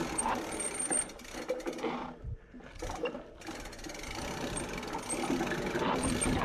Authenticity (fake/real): real